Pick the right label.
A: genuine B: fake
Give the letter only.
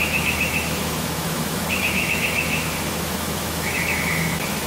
B